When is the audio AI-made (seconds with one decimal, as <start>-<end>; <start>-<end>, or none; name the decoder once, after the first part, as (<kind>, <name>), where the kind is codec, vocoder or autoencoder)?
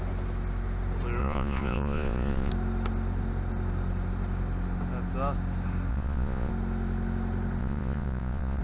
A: 1.2-2.5 (vocoder, Vocos); 5.9-6.5; 7.6-8.6